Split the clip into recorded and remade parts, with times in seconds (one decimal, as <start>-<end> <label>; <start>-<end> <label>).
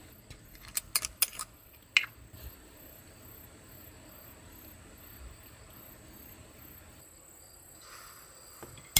0.0-1.3 recorded; 1.3-1.8 remade; 1.8-9.0 recorded